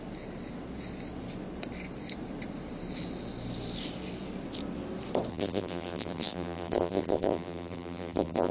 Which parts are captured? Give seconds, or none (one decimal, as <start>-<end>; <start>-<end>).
0.0-5.3